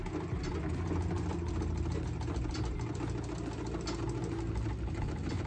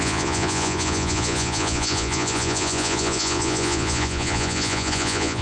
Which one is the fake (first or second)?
second